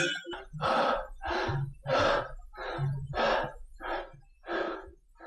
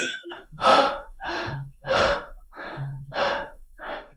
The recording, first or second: first